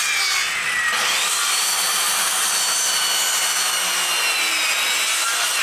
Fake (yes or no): no